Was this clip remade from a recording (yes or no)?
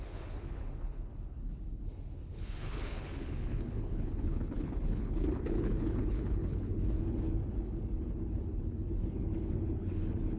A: yes